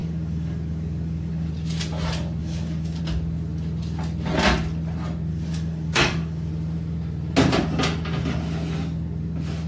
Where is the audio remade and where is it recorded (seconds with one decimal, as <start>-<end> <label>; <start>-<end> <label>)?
0.0-1.5 remade; 1.5-2.4 recorded; 2.4-3.0 remade; 3.0-5.3 recorded; 5.3-6.5 remade; 6.5-9.7 recorded